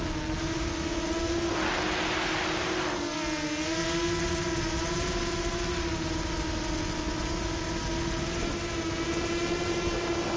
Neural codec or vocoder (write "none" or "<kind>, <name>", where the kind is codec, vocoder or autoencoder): none